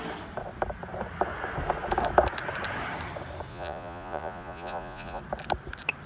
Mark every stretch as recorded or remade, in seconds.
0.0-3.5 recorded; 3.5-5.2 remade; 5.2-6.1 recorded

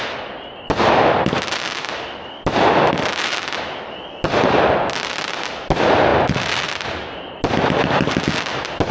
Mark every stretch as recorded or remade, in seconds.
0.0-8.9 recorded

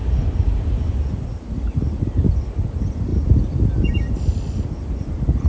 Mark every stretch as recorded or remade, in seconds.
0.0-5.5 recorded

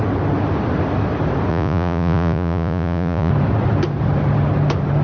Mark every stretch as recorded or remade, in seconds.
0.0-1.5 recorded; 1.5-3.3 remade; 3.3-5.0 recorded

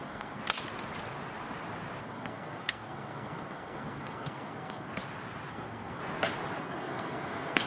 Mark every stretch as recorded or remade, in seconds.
0.0-0.4 remade; 0.4-2.0 recorded; 2.0-4.9 remade; 4.9-5.5 recorded; 5.5-6.0 remade; 6.0-6.6 recorded; 6.6-7.7 remade

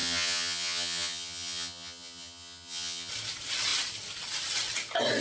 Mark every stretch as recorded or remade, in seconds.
0.0-3.1 remade; 3.1-5.2 recorded